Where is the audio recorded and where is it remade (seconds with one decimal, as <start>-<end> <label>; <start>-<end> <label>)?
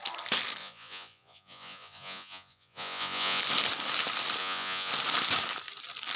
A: 0.0-0.6 recorded; 0.6-3.4 remade; 3.4-4.4 recorded; 4.4-4.9 remade; 4.9-6.2 recorded